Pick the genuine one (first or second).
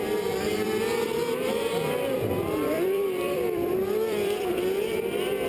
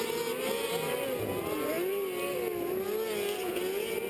second